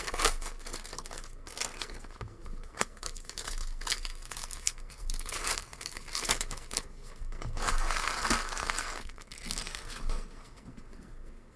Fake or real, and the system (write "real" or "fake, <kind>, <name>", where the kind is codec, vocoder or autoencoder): fake, codec, SNAC